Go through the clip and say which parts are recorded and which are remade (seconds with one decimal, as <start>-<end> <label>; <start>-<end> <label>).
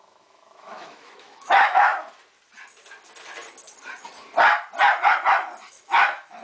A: 0.0-1.9 remade; 1.9-5.7 recorded; 5.7-6.4 remade